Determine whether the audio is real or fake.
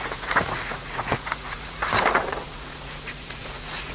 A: fake